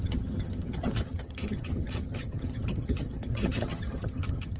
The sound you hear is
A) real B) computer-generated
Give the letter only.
B